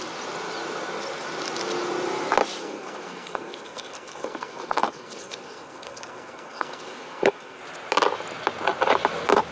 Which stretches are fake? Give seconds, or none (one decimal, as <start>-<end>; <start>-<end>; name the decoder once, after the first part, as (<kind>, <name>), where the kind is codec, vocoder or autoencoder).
2.6-7.6 (codec, SNAC)